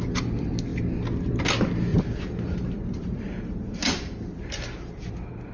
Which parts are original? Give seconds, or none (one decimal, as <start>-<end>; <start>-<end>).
0.0-1.9; 5.1-5.5